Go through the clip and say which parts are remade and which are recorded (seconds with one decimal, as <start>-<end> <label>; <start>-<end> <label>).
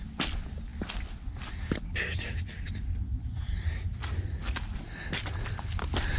0.0-6.2 recorded